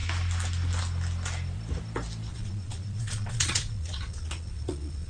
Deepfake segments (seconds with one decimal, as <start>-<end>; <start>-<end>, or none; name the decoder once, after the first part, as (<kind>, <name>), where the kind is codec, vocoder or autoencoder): 2.3-5.1 (vocoder, Vocos)